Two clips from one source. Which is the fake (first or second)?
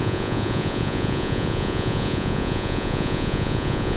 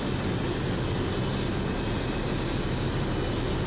first